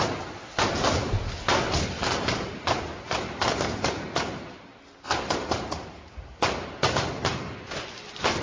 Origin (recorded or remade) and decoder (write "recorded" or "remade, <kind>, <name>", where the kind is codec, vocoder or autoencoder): recorded